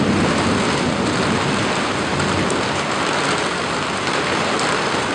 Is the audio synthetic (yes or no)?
no